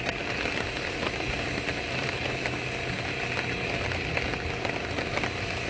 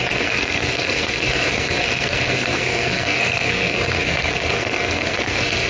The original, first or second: first